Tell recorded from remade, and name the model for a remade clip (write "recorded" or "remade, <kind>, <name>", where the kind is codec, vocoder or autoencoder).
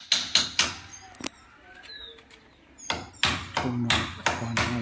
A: recorded